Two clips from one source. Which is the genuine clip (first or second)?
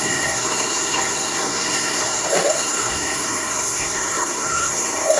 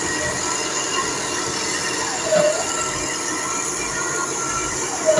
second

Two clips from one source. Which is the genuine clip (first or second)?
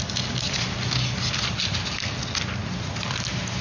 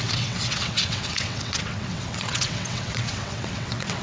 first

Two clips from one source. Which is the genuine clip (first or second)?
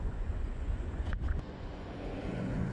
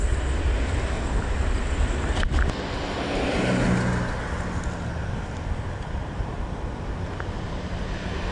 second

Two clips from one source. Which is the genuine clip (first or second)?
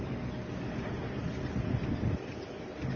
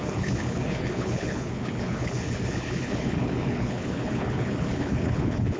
first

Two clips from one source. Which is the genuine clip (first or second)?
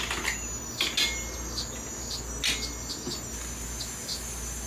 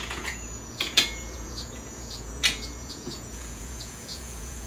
first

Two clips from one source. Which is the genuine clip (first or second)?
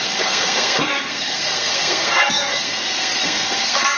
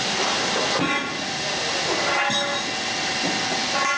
second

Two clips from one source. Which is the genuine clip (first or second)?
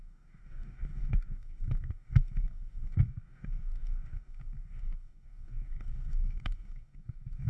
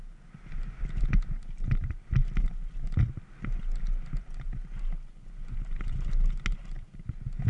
second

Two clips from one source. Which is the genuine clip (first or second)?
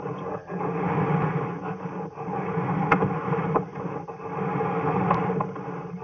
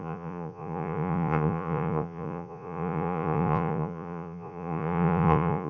first